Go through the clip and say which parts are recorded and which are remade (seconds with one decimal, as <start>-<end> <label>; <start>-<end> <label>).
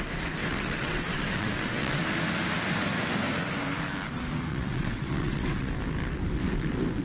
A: 0.0-0.5 recorded; 0.5-2.0 remade; 2.0-4.5 recorded; 4.5-5.7 remade; 5.7-7.0 recorded